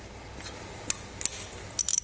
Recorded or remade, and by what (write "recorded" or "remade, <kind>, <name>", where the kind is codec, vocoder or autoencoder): recorded